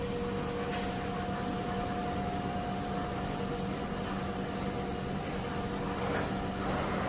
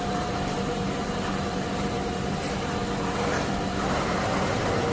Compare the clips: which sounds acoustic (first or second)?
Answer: first